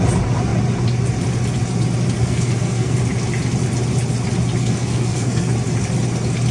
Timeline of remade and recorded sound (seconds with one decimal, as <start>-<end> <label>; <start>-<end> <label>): 0.0-2.2 recorded; 2.2-3.0 remade; 3.0-4.6 recorded; 4.6-5.5 remade; 5.5-6.5 recorded